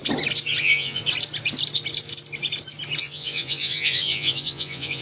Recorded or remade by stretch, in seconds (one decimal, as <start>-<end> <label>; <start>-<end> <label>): 0.0-0.6 recorded; 0.6-1.0 remade; 1.0-3.0 recorded; 3.0-5.0 remade